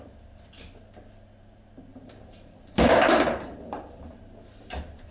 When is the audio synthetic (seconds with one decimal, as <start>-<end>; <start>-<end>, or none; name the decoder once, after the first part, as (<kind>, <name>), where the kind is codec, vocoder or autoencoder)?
1.9-5.1 (vocoder, BigVGAN v2)